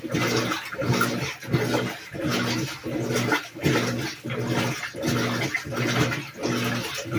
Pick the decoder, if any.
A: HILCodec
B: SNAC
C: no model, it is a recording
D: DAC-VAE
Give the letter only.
C